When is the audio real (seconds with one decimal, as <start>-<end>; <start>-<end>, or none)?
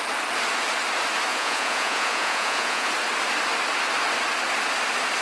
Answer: 0.0-1.3; 2.9-5.2